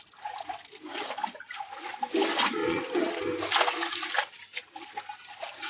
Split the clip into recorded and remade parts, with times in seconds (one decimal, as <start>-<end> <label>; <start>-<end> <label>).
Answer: 0.0-2.6 recorded; 2.6-3.2 remade; 3.2-5.7 recorded